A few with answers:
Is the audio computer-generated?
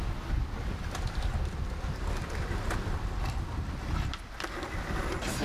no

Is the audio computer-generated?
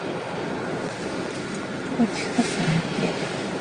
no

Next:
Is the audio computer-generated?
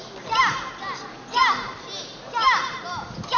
no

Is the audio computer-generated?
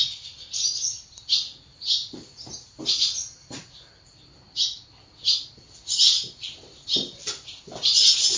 no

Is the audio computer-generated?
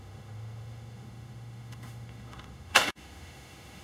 yes